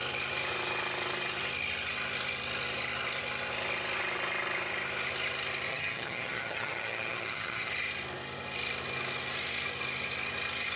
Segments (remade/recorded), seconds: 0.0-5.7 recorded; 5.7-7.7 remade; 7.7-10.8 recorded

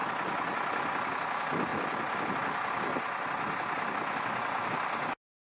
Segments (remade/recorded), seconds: 0.0-5.5 recorded